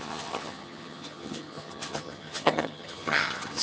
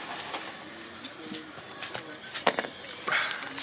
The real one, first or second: second